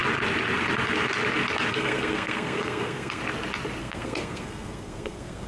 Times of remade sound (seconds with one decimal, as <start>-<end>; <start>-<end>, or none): 1.7-3.2; 3.8-5.5